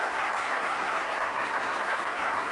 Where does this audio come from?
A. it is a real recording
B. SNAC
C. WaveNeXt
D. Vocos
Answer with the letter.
B